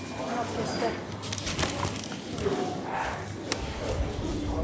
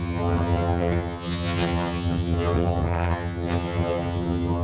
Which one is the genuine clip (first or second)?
first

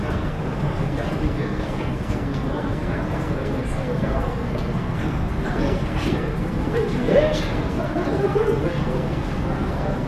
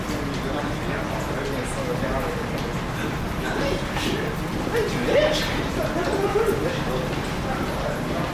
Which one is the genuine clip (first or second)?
second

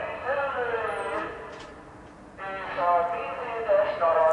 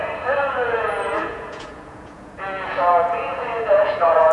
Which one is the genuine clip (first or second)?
first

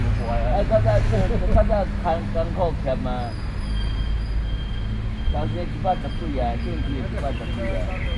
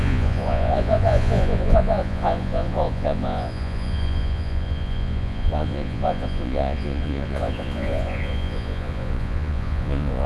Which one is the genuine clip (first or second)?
first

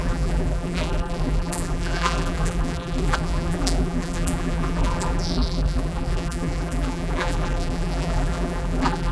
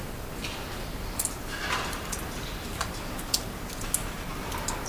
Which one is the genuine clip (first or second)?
second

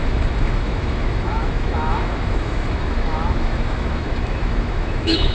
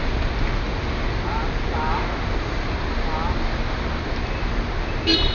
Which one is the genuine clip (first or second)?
second